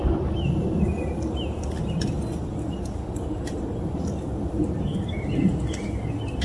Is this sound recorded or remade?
recorded